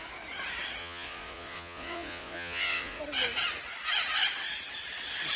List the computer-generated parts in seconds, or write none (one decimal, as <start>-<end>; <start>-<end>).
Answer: 0.8-3.0